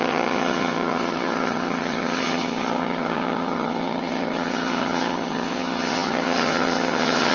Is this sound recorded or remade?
remade